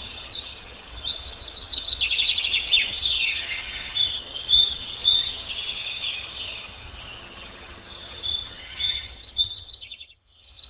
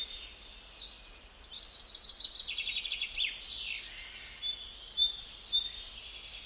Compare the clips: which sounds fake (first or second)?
first